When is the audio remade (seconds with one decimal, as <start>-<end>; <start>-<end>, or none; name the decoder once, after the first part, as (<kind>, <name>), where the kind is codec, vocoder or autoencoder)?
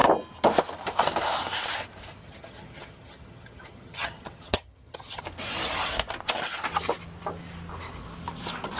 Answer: 2.2-5.2 (vocoder, HiFi-GAN)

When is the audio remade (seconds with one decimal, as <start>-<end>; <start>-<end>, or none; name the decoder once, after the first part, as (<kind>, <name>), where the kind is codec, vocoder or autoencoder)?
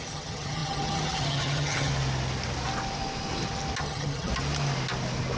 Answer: 0.0-1.9 (vocoder, HiFi-GAN); 3.8-4.3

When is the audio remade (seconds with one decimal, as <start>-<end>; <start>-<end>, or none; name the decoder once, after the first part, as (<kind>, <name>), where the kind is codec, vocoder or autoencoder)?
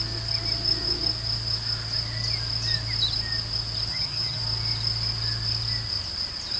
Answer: 3.9-4.4 (vocoder, HiFi-GAN)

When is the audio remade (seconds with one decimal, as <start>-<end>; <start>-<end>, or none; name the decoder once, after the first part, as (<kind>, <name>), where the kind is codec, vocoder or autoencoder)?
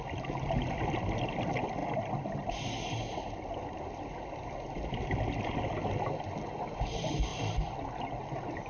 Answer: none